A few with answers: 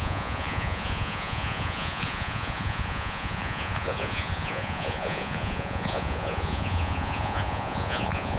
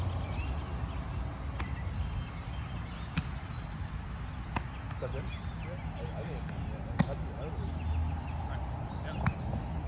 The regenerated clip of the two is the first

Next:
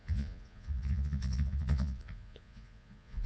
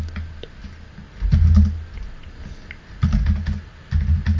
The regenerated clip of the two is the first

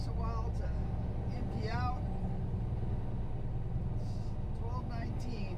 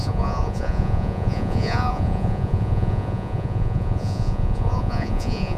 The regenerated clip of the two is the second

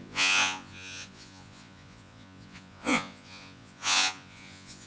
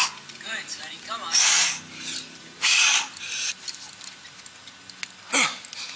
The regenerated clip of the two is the first